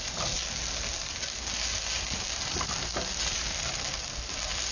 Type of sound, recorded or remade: recorded